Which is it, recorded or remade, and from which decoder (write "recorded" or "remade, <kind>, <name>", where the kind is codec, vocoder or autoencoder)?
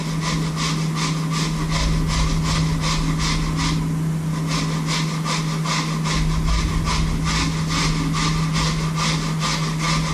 recorded